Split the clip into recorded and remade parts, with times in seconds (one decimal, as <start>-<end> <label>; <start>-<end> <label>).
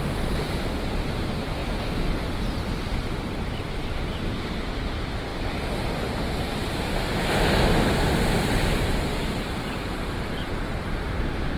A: 0.0-1.6 remade; 1.6-4.6 recorded; 4.6-5.3 remade; 5.3-8.8 recorded; 8.8-11.6 remade